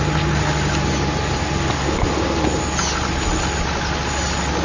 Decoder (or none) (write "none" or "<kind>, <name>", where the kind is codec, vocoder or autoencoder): none